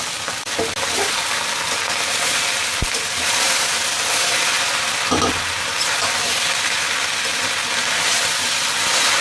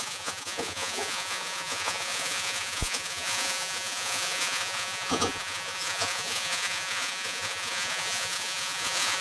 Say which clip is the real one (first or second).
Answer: first